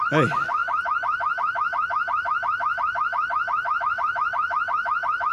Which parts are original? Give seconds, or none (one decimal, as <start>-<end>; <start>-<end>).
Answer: 0.0-0.6; 3.8-5.3